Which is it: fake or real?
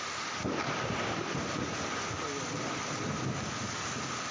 real